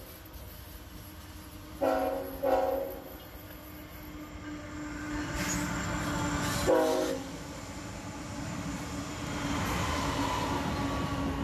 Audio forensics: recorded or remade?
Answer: recorded